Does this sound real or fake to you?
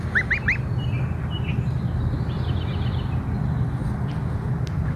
real